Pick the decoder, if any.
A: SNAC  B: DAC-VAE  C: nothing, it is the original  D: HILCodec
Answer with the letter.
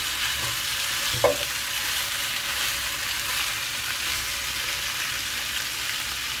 C